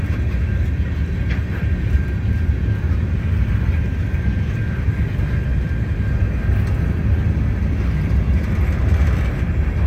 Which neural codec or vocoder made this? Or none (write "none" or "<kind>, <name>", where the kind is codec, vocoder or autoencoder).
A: none